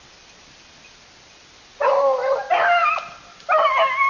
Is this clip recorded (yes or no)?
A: yes